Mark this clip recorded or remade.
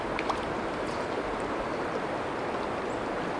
recorded